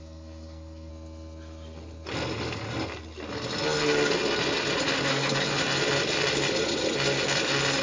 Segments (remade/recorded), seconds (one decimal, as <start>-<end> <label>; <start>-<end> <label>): 0.0-0.9 remade; 0.9-5.1 recorded; 5.1-5.5 remade; 5.5-7.8 recorded